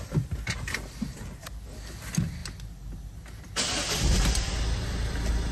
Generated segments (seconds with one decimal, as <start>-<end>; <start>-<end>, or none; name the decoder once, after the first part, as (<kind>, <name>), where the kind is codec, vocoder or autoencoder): none